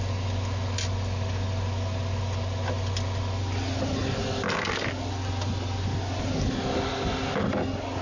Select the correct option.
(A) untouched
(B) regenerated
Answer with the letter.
A